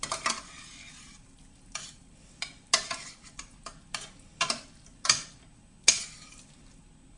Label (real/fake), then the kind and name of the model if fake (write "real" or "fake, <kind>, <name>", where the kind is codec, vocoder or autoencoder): real